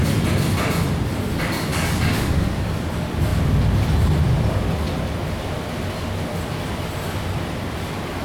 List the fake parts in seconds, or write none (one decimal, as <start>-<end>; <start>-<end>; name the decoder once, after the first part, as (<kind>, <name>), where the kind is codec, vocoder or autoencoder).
1.7-2.9 (codec, DAC)